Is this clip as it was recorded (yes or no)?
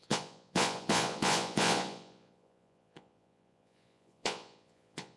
no